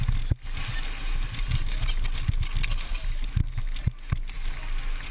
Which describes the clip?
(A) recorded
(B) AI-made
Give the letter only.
A